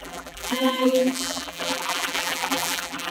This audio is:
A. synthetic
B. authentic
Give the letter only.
A